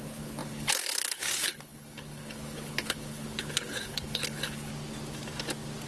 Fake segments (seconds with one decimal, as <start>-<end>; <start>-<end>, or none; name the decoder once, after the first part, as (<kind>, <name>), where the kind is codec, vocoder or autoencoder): 0.0-4.7 (codec, HILCodec)